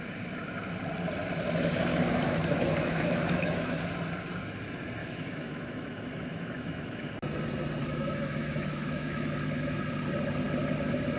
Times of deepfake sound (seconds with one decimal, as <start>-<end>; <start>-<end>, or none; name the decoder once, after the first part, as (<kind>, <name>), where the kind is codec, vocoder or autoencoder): 1.9-3.8 (autoencoder, DAC-VAE); 5.0-7.1; 7.8-9.3